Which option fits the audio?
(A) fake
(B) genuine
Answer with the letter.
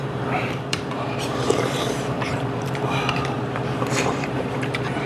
A